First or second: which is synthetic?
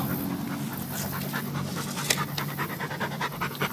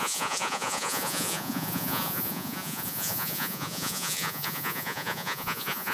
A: second